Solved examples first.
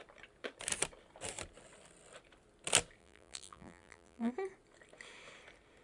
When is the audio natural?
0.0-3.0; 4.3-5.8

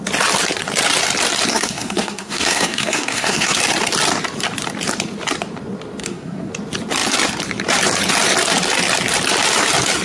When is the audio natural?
0.0-1.5; 3.6-6.0; 6.5-10.0

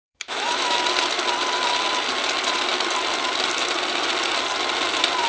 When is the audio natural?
0.8-5.3

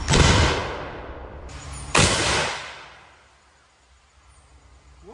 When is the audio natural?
0.0-5.1

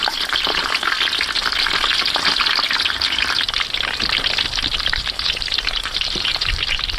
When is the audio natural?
0.6-4.8

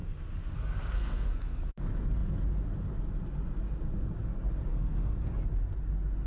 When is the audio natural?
1.6-4.7; 5.3-6.3

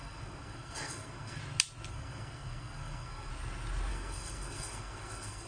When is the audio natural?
1.4-1.9; 3.3-3.9

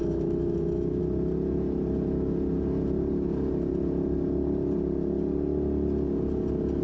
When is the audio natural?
1.0-6.8